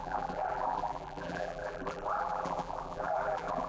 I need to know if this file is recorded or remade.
remade